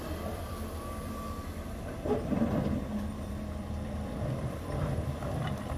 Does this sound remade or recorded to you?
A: remade